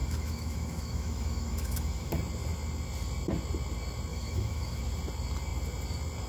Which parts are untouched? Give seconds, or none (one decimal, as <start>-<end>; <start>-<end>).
2.1-4.1; 4.8-6.3